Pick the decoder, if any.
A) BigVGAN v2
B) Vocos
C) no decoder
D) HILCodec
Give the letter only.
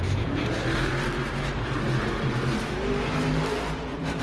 A